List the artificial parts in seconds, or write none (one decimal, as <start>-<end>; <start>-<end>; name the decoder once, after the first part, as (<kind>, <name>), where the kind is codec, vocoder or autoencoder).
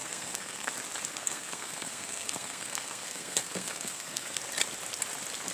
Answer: 0.0-0.7 (codec, SNAC); 1.1-4.4